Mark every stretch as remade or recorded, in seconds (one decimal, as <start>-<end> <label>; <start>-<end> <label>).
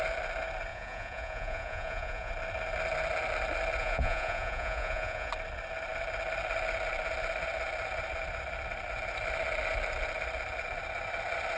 0.0-0.7 recorded; 0.7-2.3 remade; 2.3-3.8 recorded; 3.8-5.3 remade; 5.3-11.6 recorded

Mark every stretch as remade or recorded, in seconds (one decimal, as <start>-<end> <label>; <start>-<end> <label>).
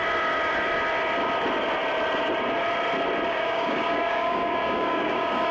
0.0-3.3 recorded; 3.3-5.5 remade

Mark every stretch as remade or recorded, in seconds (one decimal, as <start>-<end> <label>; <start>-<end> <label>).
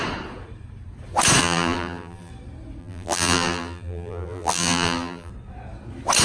0.0-1.4 recorded; 1.4-2.3 remade; 2.3-2.8 recorded; 2.8-5.3 remade; 5.3-6.2 recorded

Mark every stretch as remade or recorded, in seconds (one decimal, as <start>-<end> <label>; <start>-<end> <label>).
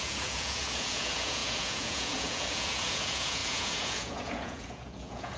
0.0-5.4 remade